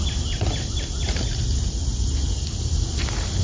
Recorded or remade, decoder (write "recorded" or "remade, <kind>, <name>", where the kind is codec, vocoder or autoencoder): recorded